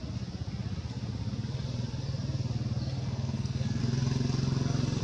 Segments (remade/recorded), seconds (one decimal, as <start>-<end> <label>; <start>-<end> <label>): 0.0-3.0 recorded; 3.0-3.8 remade; 3.8-5.0 recorded